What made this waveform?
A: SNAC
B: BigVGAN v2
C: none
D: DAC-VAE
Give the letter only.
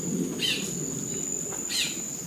C